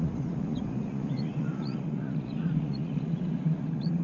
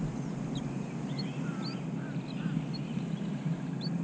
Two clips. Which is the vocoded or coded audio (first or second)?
first